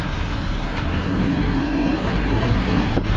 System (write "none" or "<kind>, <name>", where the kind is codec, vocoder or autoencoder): codec, SNAC